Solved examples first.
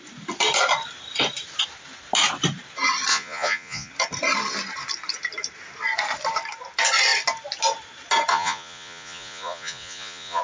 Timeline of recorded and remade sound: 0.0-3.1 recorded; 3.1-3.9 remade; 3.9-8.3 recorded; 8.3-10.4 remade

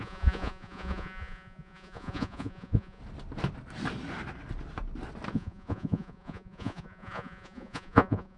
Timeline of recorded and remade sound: 0.0-3.0 remade; 3.0-5.3 recorded; 5.3-8.4 remade

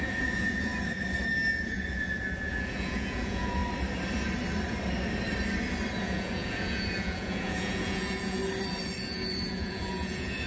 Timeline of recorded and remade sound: 0.0-0.7 remade; 0.7-1.3 recorded; 1.3-3.6 remade; 3.6-6.0 recorded; 6.0-8.4 remade; 8.4-9.0 recorded; 9.0-10.5 remade

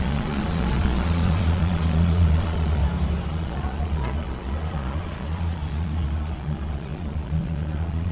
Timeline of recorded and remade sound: 0.0-2.8 remade; 2.8-3.3 recorded; 3.3-8.1 remade

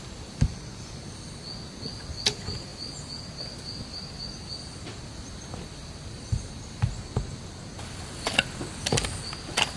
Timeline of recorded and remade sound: 0.0-0.5 recorded; 0.5-1.0 remade; 1.0-9.8 recorded

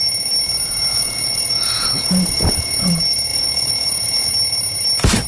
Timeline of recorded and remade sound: 0.0-0.9 recorded; 0.9-2.9 remade; 2.9-3.3 recorded; 3.3-4.3 remade; 4.3-5.3 recorded

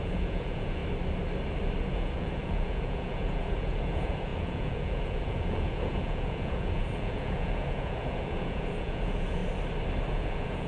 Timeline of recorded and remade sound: 0.0-0.8 remade; 0.8-1.9 recorded; 1.9-9.4 remade; 9.4-10.1 recorded; 10.1-10.7 remade